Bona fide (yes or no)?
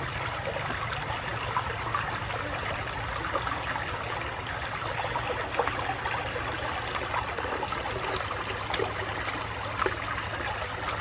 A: yes